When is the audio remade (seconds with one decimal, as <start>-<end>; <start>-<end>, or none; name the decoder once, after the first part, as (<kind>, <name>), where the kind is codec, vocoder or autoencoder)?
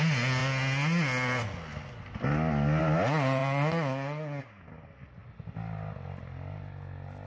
none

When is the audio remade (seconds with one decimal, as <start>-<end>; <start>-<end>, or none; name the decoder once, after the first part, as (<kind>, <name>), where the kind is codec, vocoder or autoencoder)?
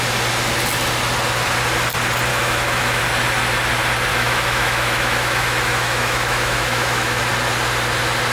2.3-3.0 (autoencoder, DAC-VAE); 4.1-7.2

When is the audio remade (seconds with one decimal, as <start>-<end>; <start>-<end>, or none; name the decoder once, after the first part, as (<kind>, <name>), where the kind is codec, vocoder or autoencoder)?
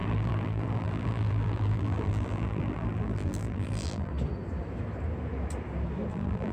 0.0-4.1 (vocoder, BigVGAN v2); 6.1-6.5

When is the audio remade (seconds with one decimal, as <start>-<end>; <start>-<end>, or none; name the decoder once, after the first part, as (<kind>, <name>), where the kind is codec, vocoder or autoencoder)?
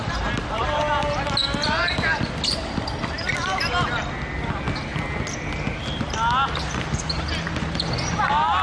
none